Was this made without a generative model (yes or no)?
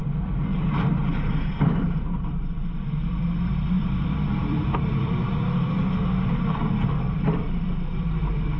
no